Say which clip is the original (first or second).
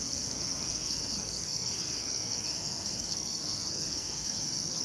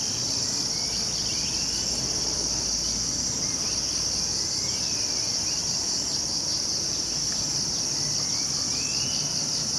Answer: second